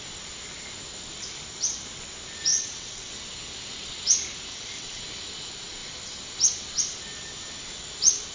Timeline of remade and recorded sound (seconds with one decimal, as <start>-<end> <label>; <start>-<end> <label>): 0.0-2.5 recorded; 2.5-3.1 remade; 3.1-4.5 recorded; 4.5-5.0 remade; 5.0-8.3 recorded